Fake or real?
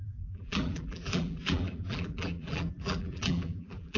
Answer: fake